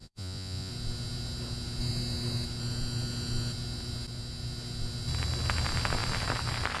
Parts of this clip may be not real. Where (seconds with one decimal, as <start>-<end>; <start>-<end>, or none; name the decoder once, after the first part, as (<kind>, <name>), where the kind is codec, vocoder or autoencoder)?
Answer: 0.0-0.7 (vocoder, Vocos)